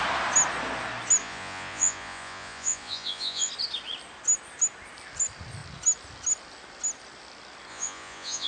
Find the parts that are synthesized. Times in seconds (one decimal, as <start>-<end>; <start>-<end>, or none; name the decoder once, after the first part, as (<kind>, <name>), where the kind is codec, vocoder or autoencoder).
1.2-3.5 (vocoder, Vocos); 7.7-8.5